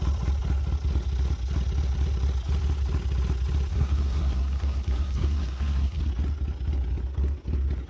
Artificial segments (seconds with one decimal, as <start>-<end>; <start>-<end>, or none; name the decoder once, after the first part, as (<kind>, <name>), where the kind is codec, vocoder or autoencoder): 3.7-6.0 (codec, SNAC)